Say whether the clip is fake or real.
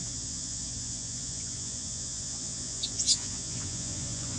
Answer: fake